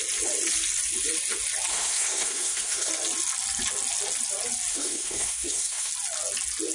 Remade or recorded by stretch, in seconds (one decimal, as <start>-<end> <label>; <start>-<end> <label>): 0.0-1.7 recorded; 1.7-2.9 remade; 2.9-4.7 recorded; 4.7-5.9 remade; 5.9-6.7 recorded